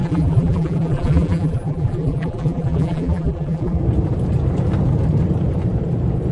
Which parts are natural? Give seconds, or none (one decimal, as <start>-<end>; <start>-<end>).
3.8-6.3